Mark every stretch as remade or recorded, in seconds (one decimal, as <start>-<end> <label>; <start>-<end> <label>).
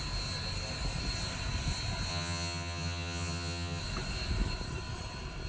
0.0-2.1 recorded; 2.1-3.8 remade; 3.8-5.5 recorded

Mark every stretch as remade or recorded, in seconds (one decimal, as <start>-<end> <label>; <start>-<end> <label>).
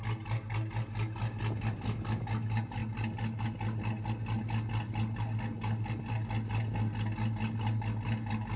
0.0-8.6 recorded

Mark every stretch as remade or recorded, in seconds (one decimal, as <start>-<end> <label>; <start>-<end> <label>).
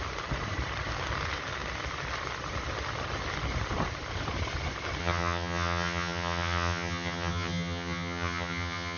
0.0-5.0 recorded; 5.0-9.0 remade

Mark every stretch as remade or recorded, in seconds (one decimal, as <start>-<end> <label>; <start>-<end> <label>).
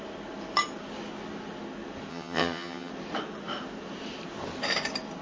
0.0-2.1 recorded; 2.1-2.9 remade; 2.9-5.2 recorded